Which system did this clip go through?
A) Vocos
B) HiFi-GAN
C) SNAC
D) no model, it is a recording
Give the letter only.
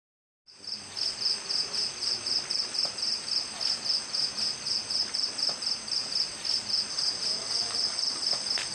D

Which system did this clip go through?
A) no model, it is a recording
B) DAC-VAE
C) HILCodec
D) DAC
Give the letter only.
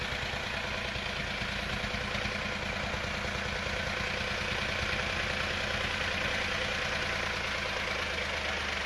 A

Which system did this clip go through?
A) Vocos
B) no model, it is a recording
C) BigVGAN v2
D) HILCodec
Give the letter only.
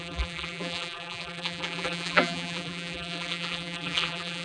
C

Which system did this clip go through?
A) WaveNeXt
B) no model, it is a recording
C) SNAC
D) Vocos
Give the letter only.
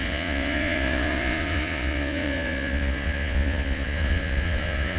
D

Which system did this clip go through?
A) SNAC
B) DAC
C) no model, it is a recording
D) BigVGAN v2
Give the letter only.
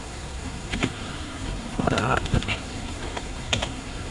A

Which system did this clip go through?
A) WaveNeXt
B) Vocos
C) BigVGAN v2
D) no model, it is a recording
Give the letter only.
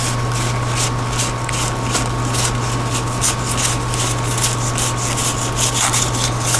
D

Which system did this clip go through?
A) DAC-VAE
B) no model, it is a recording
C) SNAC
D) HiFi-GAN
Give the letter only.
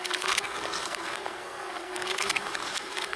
C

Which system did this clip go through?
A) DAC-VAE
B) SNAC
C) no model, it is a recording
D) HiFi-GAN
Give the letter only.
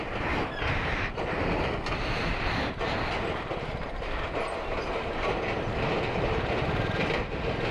C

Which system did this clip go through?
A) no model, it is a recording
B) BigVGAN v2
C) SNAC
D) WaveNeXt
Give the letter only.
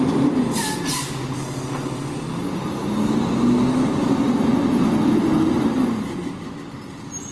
A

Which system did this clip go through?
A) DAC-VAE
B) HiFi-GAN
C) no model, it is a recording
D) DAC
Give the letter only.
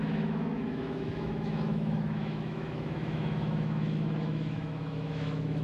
A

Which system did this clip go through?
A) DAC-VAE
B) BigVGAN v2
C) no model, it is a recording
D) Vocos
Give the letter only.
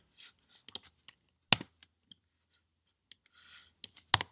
C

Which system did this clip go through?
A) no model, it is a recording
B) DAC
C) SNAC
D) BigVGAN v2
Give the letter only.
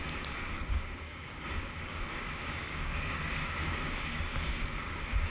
B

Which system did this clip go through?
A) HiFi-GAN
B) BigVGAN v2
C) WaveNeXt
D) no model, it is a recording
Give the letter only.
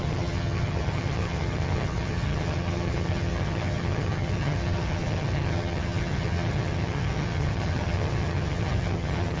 A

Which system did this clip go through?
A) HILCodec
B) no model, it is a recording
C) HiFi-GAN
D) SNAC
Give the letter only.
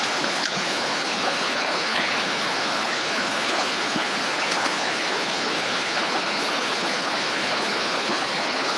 A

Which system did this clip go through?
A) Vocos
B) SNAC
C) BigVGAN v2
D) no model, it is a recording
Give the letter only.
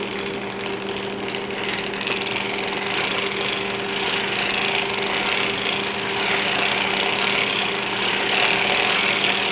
D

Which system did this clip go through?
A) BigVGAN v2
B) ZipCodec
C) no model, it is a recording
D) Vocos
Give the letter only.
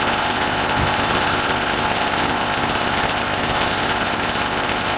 B